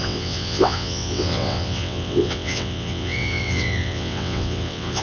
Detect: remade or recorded remade